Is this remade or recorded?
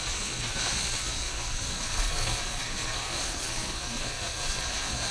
remade